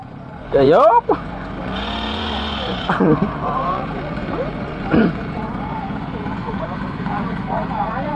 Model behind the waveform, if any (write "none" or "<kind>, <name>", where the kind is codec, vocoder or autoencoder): vocoder, Vocos